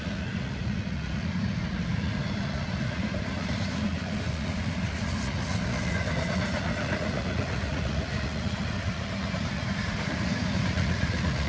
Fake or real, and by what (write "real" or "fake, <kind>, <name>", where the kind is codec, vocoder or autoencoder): fake, vocoder, Vocos